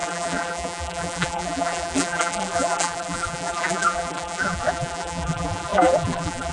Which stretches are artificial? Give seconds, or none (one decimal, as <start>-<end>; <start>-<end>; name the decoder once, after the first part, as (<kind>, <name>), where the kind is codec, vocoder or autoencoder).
0.0-6.5 (vocoder, BigVGAN v2)